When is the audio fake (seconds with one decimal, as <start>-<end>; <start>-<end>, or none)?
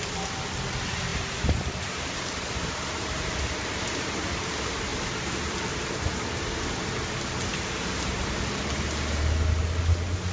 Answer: 1.1-4.4; 7.5-8.6